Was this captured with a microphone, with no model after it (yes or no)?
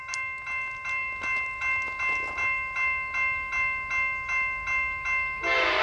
yes